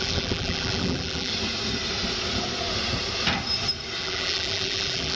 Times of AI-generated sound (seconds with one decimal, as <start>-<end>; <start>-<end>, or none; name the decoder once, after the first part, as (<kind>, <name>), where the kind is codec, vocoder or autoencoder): 0.0-1.3 (vocoder, BigVGAN v2); 4.0-5.2